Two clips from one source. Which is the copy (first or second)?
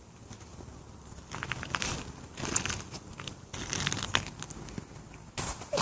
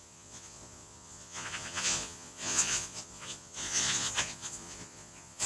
second